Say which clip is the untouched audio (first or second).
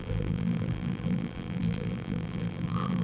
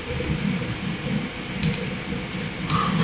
second